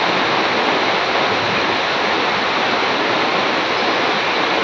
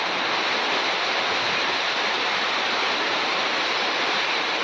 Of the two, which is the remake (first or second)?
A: second